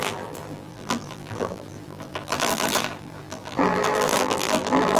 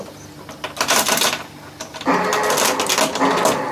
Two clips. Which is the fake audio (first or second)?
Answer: first